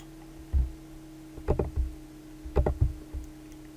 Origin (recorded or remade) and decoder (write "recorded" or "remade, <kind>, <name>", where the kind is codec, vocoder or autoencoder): recorded